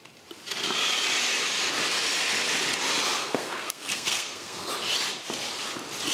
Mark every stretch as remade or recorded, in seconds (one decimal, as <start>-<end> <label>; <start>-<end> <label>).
0.0-3.2 recorded; 3.2-4.7 remade; 4.7-6.1 recorded